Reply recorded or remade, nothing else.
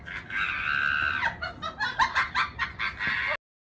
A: recorded